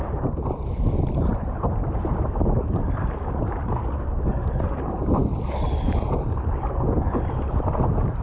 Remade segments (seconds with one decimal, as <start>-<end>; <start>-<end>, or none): none